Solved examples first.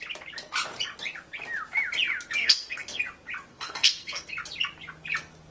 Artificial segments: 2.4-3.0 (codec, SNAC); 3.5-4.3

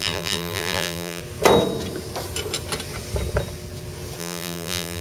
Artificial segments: 0.0-1.2 (vocoder, BigVGAN v2); 4.2-5.0

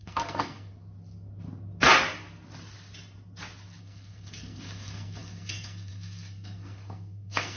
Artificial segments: 0.0-0.8 (codec, SNAC); 3.8-7.6

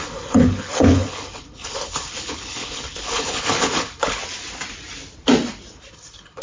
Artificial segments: 0.0-4.2 (codec, HILCodec); 5.9-6.4

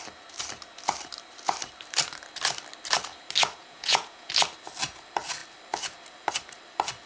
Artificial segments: 3.6-4.3 (vocoder, Vocos)

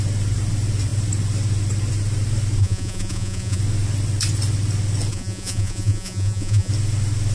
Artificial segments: 2.6-3.6 (vocoder, Vocos); 5.1-6.7

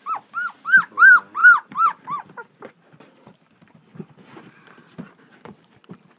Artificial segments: 1.4-5.1 (vocoder, BigVGAN v2)